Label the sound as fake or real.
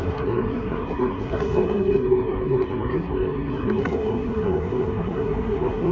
fake